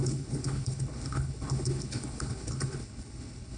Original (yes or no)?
no